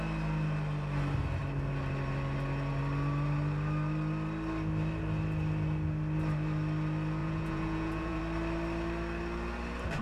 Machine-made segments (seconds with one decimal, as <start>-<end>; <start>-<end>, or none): 7.2-8.2